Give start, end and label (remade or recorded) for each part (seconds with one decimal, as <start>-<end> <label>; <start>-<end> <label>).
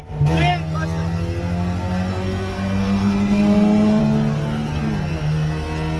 0.0-2.1 recorded; 2.1-4.0 remade; 4.0-6.0 recorded